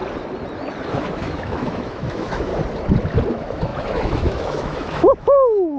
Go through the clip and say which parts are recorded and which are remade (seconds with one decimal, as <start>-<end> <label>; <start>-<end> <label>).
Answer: 0.0-0.9 recorded; 0.9-2.5 remade; 2.5-3.3 recorded; 3.3-5.8 remade